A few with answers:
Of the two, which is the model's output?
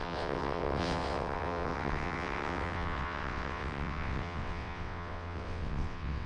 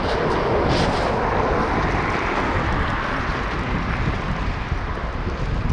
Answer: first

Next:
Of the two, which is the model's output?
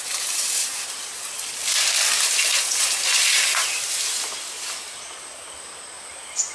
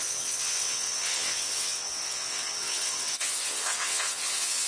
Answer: second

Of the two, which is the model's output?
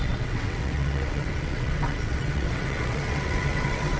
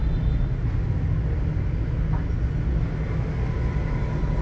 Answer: first